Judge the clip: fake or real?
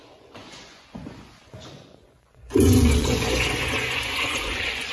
fake